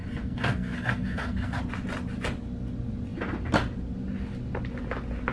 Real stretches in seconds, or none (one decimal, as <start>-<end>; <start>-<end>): 1.6-5.3